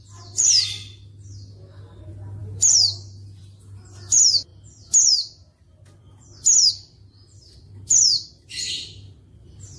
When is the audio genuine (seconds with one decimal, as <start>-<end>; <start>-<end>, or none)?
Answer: 0.0-9.8